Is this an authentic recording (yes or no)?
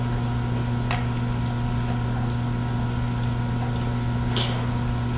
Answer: yes